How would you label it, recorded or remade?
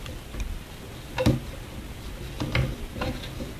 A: recorded